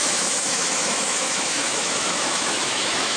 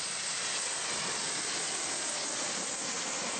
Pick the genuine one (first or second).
second